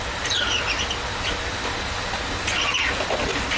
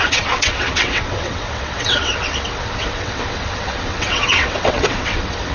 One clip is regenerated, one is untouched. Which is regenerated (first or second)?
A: second